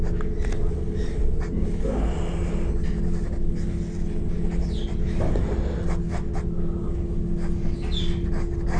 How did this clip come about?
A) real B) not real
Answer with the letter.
A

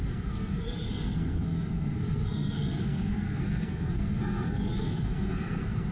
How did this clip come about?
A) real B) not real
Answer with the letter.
B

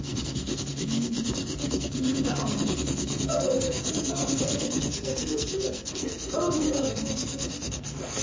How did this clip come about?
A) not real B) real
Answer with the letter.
A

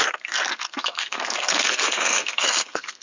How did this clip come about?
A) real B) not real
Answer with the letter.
B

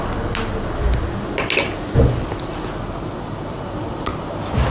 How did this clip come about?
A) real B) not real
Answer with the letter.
A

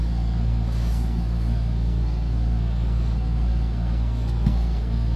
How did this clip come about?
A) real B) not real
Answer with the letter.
B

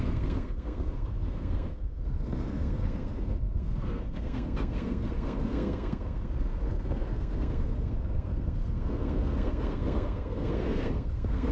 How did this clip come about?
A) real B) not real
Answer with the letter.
B